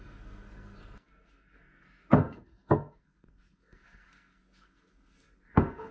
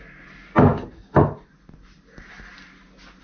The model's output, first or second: first